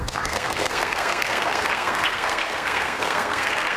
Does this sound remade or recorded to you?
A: remade